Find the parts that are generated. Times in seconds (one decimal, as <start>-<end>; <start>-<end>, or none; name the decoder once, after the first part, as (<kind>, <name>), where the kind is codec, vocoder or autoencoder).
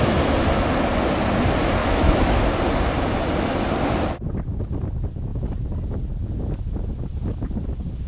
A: 1.8-2.4 (autoencoder, DAC-VAE)